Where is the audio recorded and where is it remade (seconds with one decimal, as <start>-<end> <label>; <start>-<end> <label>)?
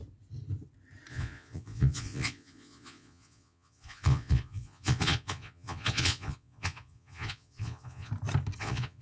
0.0-1.1 recorded; 1.1-8.1 remade; 8.1-8.6 recorded; 8.6-9.0 remade